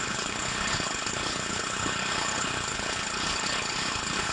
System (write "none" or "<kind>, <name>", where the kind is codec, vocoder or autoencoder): codec, HILCodec